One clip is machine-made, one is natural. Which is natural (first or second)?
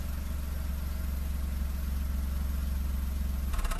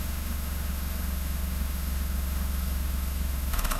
first